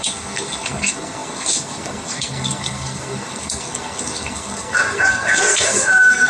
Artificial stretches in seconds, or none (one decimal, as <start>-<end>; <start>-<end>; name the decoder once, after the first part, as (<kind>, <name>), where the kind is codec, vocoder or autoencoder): 0.0-6.3 (codec, SNAC)